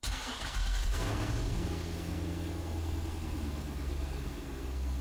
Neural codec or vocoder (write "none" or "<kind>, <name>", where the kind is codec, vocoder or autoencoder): codec, SNAC